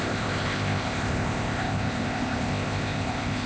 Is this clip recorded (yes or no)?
no